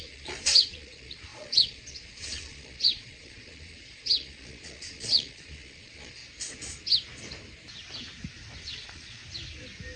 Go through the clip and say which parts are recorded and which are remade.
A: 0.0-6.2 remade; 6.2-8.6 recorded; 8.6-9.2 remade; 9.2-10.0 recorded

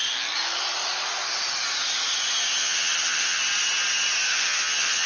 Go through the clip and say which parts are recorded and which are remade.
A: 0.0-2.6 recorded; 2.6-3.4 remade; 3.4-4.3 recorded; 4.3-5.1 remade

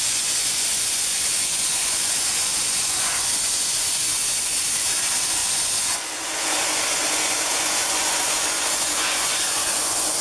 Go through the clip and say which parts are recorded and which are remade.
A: 0.0-10.2 remade